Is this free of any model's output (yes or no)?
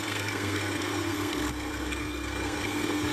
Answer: no